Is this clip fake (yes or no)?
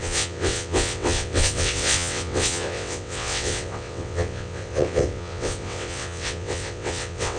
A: yes